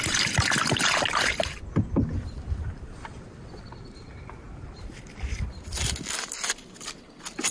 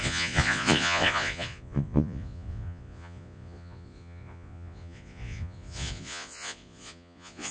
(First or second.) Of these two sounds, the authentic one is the first